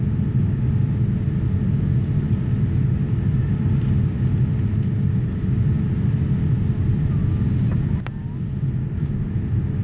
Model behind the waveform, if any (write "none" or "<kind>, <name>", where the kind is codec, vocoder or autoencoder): none